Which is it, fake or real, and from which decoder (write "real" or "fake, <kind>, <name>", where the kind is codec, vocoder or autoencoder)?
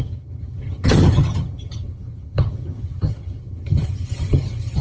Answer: fake, vocoder, HiFi-GAN